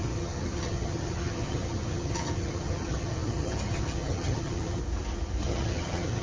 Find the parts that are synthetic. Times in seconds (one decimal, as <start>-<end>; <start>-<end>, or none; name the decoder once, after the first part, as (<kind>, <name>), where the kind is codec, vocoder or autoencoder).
0.0-4.8 (vocoder, HiFi-GAN); 5.4-6.2